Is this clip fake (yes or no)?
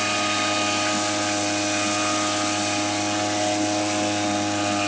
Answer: no